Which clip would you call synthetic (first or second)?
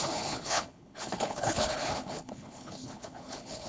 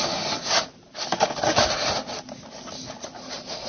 first